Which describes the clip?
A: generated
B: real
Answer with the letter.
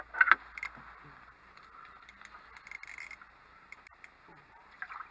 B